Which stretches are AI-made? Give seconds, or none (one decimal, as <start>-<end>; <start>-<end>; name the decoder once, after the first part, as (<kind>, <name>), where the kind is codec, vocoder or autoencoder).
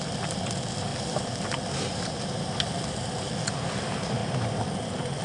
none